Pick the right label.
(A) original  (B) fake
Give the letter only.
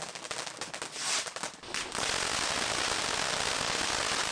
A